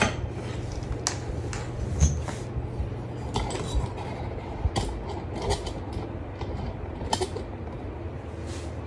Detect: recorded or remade recorded